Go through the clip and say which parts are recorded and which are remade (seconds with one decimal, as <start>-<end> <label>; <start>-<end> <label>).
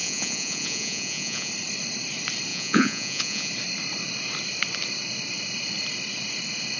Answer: 0.0-1.5 remade; 1.5-2.5 recorded; 2.5-3.5 remade; 3.5-6.8 recorded